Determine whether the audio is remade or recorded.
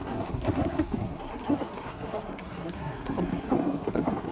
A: remade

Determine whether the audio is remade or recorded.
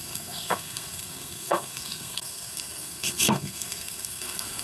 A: remade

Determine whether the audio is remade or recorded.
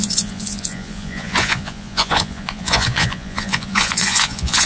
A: remade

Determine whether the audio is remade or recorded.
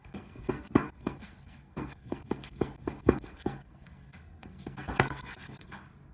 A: remade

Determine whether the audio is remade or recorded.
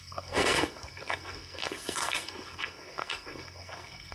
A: remade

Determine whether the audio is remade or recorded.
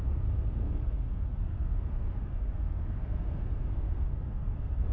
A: remade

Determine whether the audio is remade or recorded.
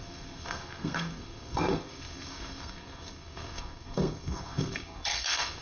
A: remade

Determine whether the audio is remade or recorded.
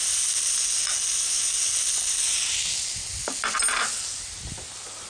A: recorded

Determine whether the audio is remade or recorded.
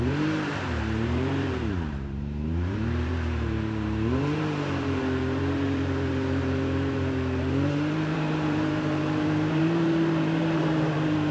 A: remade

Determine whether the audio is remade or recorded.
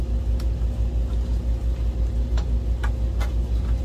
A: recorded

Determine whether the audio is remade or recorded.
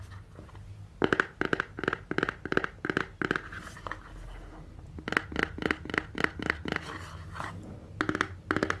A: recorded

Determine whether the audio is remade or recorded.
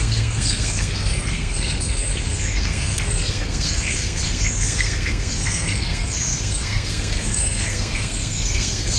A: remade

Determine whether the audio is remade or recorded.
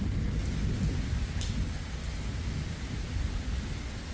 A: recorded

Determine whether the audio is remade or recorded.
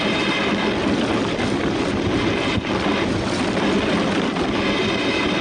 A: recorded